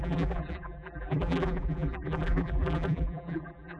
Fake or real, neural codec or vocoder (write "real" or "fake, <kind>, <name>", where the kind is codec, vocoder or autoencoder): fake, vocoder, BigVGAN v2